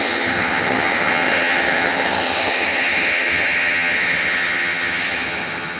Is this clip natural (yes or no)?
no